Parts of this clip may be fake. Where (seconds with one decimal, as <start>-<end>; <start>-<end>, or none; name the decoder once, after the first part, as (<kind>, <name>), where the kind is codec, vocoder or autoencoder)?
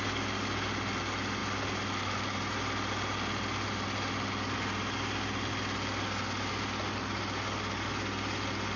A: none